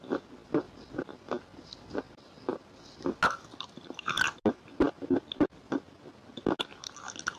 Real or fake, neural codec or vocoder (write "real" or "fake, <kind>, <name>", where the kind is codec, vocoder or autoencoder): real